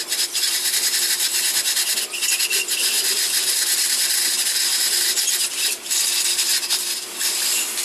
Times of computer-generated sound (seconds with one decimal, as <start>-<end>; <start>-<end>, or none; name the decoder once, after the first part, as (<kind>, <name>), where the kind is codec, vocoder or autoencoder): 0.0-1.3 (vocoder, BigVGAN v2); 5.3-7.8